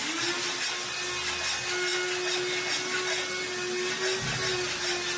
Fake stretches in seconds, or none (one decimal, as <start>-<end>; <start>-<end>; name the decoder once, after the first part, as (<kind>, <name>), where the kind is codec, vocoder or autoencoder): none